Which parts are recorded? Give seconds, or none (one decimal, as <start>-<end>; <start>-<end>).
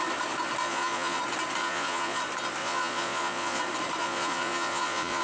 0.0-0.6; 1.2-1.6; 2.2-2.6; 3.6-4.0